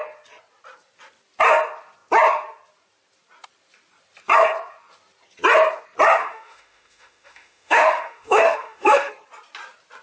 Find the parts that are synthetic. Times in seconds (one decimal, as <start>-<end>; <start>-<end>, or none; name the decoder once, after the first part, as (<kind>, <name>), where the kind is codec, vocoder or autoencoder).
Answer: 6.2-9.1 (autoencoder, DAC-VAE)